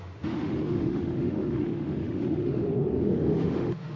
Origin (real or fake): fake